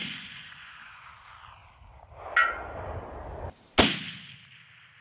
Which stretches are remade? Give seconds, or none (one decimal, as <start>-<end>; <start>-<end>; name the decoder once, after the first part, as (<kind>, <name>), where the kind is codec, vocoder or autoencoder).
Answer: 0.0-1.0 (vocoder, Vocos)